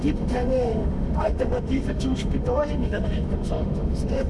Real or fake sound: fake